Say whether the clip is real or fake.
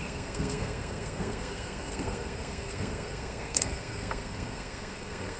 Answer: fake